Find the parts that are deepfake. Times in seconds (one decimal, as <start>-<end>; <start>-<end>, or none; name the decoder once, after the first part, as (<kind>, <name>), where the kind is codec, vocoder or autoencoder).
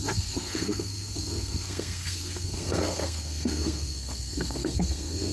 0.0-5.3 (codec, SNAC)